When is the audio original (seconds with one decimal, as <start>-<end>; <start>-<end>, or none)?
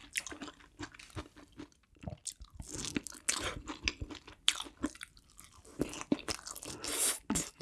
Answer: 0.0-7.6